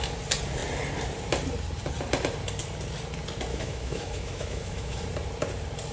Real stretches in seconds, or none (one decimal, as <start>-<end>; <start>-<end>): 0.0-3.5; 5.0-5.9